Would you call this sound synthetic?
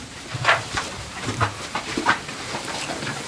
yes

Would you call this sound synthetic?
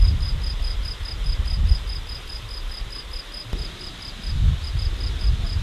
no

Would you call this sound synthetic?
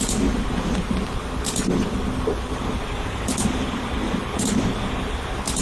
no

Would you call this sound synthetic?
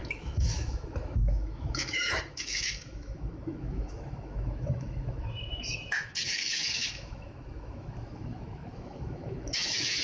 yes